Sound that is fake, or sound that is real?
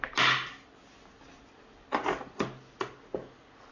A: real